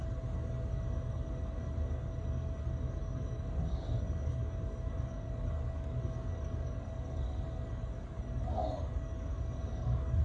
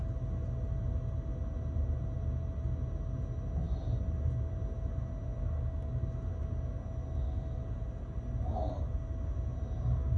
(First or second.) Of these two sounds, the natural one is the second